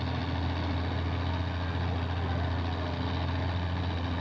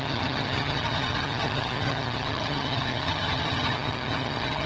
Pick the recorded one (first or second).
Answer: first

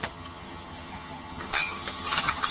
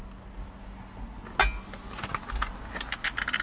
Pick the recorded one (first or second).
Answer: second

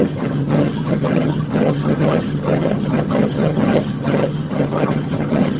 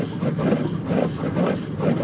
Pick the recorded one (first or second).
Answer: second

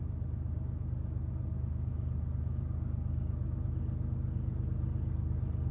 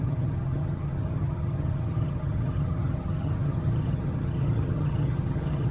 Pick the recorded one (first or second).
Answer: first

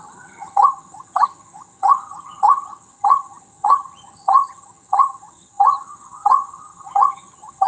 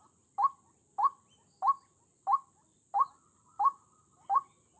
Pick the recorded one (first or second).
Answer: second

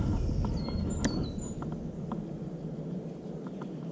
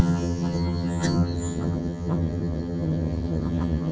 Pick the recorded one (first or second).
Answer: first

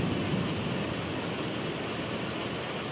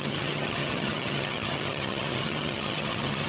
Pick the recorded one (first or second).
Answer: first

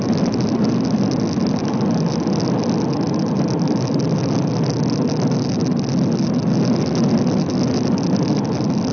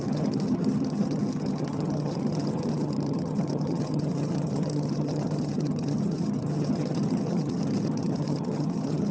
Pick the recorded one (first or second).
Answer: first